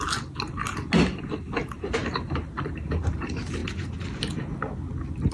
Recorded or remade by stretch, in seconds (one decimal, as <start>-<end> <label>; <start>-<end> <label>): 0.0-1.6 recorded; 1.6-3.2 remade; 3.2-5.3 recorded